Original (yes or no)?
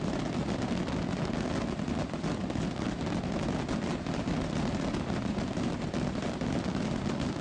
yes